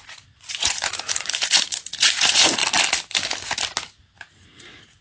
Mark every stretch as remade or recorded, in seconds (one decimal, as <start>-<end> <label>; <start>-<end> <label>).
0.0-2.6 remade; 2.6-4.0 recorded; 4.0-5.0 remade